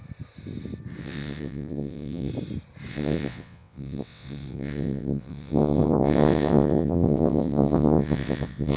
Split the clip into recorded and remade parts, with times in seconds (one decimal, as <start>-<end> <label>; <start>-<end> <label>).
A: 0.0-1.0 recorded; 1.0-2.3 remade; 2.3-2.9 recorded; 2.9-8.8 remade